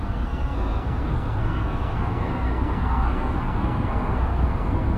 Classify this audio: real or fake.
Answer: fake